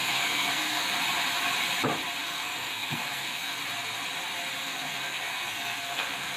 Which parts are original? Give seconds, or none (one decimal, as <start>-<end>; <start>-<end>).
1.0-2.2; 3.6-4.6